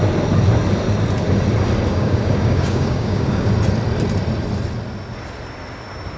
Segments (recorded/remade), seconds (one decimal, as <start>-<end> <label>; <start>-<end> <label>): 0.0-1.9 recorded; 1.9-3.5 remade; 3.5-6.2 recorded